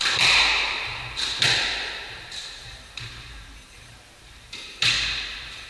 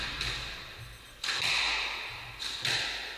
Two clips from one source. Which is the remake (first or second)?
first